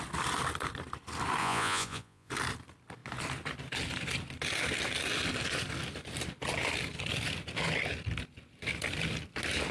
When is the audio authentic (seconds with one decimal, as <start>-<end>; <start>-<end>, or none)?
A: 0.0-1.4; 2.3-9.7